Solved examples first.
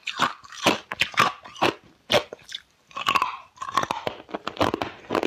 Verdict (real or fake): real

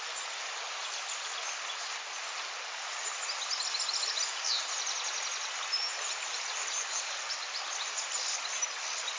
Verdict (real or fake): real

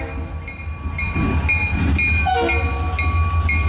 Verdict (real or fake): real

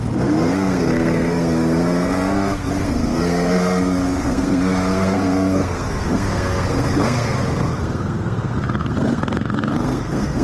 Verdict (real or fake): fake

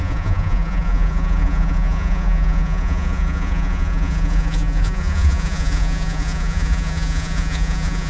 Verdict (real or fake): fake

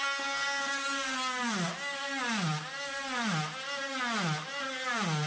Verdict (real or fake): real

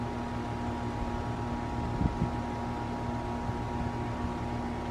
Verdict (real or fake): real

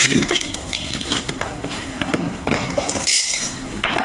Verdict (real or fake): fake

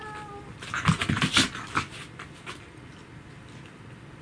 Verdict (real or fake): real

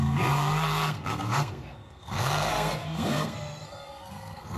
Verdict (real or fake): fake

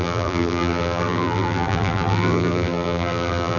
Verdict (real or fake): fake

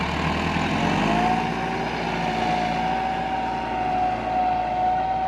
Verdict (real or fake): real